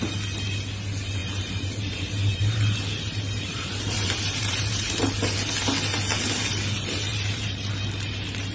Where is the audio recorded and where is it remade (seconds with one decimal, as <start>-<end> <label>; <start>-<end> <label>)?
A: 0.0-1.2 recorded; 1.2-5.1 remade; 5.1-7.1 recorded; 7.1-7.7 remade; 7.7-8.5 recorded